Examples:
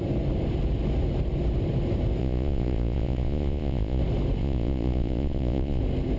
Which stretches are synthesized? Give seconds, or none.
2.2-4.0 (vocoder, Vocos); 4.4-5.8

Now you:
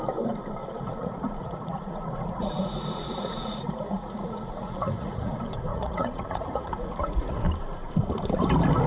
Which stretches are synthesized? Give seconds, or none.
0.6-5.3 (vocoder, Vocos); 5.7-7.4

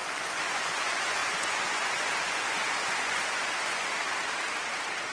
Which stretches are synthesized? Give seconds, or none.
0.0-4.0 (vocoder, Vocos)

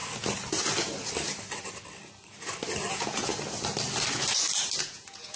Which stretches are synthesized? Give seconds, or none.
2.9-3.3 (vocoder, Vocos); 4.8-5.4